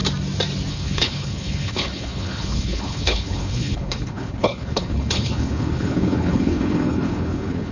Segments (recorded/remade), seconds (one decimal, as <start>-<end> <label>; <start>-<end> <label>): 0.0-0.7 recorded; 0.7-7.7 remade